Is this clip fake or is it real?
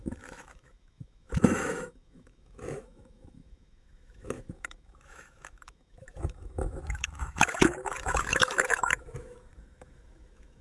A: fake